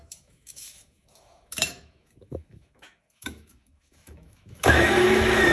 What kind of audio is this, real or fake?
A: fake